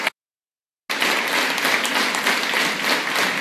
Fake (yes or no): no